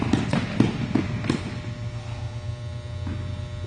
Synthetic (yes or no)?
no